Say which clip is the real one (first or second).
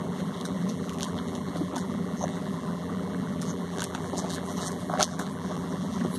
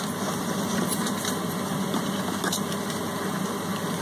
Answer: second